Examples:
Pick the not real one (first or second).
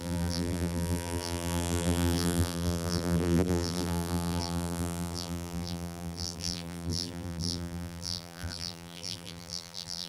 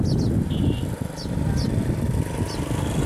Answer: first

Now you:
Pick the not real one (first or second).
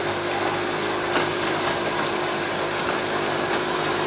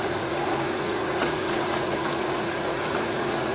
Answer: second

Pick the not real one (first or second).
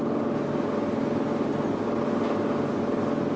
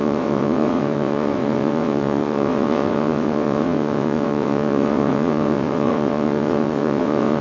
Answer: second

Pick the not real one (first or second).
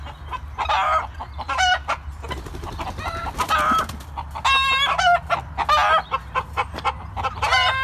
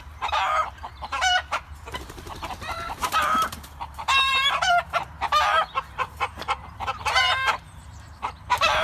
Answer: second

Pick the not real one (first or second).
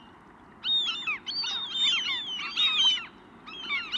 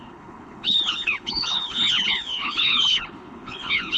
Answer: second